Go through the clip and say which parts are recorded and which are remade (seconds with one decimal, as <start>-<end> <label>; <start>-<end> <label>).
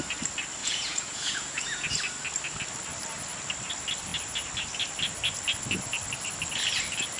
0.0-0.6 recorded; 0.6-1.9 remade; 1.9-7.2 recorded